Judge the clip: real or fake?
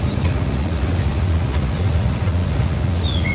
fake